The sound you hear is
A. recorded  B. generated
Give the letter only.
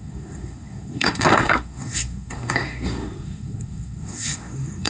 B